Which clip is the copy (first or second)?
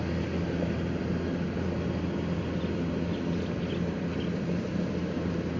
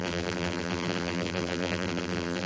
second